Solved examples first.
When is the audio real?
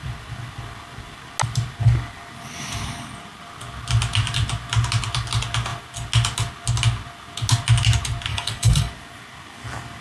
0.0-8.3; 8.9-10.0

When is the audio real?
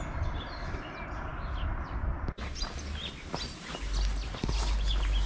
0.0-5.3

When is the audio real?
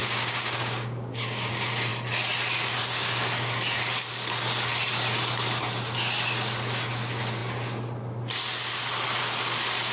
1.5-9.9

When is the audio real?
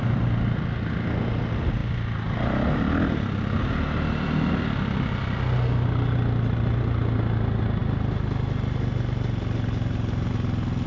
0.0-10.9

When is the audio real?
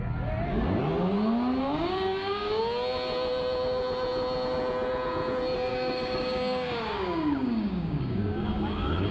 0.0-1.6; 2.6-5.7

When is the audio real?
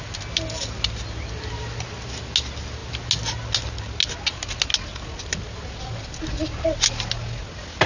0.0-7.9